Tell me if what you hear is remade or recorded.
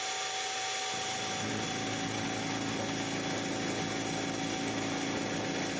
recorded